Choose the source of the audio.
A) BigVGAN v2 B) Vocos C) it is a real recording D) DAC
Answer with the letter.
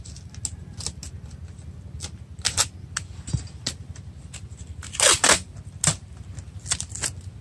C